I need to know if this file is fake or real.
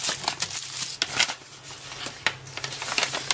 real